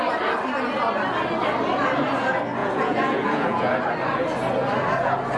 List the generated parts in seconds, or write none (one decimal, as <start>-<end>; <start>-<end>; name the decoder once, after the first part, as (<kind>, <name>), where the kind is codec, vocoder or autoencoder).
2.6-3.7 (vocoder, Vocos)

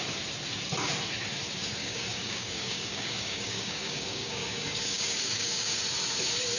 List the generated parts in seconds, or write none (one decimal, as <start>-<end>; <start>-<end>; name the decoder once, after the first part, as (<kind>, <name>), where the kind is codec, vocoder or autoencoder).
1.8-5.8 (codec, DAC)

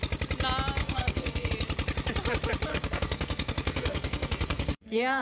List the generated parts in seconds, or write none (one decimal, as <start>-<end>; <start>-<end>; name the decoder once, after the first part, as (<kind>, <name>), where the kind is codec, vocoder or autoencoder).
0.8-1.5 (codec, SNAC); 2.7-5.2